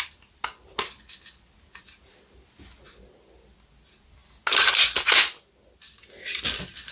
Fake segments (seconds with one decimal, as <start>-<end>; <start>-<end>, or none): none